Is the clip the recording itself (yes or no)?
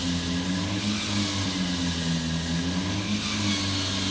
yes